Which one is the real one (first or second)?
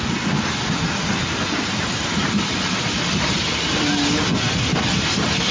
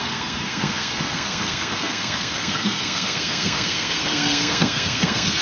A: first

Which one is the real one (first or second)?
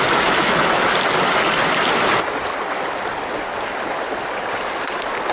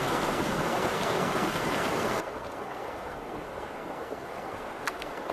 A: first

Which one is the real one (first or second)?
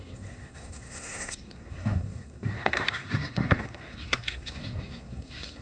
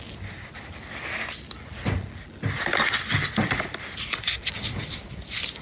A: second